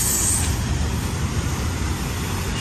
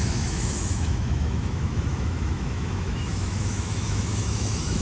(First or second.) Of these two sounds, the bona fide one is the first